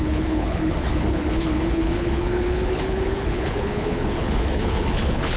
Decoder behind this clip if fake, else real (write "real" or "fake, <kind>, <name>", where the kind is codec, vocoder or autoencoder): fake, codec, HILCodec